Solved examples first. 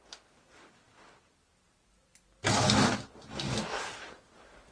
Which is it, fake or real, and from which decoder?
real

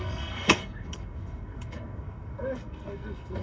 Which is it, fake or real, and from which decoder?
fake, codec, SNAC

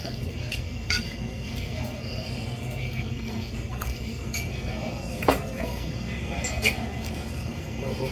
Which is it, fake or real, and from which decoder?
fake, codec, SNAC